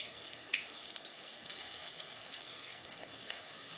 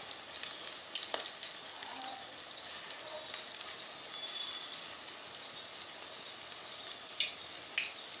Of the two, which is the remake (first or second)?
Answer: first